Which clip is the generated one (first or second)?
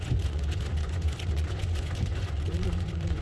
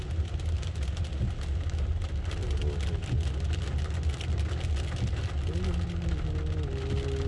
first